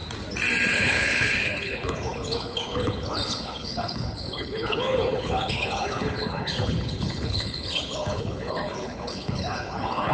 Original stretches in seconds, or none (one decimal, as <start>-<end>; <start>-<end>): 0.0-0.7

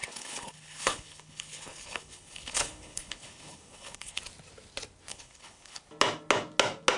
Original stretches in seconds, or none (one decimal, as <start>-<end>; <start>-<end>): 4.2-5.1; 5.8-7.0

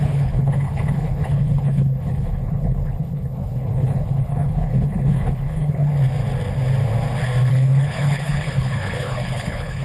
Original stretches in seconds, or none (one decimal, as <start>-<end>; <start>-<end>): 5.9-7.5

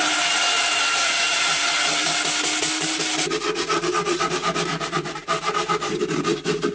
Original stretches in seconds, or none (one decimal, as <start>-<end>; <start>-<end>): 0.0-6.7

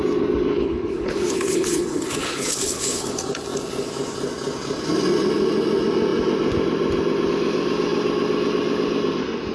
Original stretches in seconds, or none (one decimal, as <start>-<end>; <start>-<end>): 0.0-0.5; 3.1-9.5

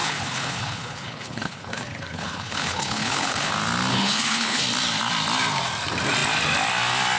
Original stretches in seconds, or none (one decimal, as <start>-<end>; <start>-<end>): 3.5-3.9; 4.6-7.2

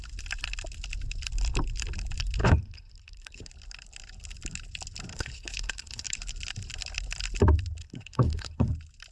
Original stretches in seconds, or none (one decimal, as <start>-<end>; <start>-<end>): 0.0-2.4; 3.5-5.1; 6.2-7.8; 8.7-9.1

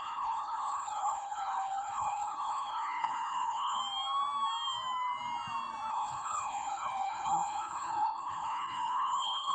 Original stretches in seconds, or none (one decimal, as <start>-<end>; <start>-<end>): 3.8-5.9